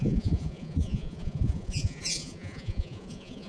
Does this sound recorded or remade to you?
remade